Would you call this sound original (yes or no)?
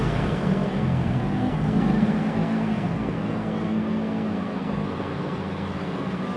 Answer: no